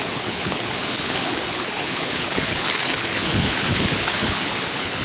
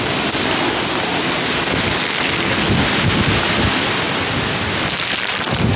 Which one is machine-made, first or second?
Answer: first